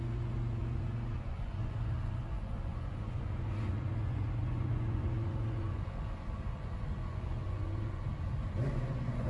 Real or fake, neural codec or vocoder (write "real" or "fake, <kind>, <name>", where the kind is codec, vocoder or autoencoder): fake, vocoder, Vocos